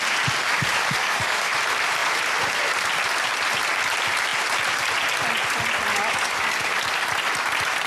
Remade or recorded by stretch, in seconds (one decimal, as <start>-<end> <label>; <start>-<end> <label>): 0.0-1.0 recorded; 1.0-1.5 remade; 1.5-5.9 recorded; 5.9-6.6 remade; 6.6-7.9 recorded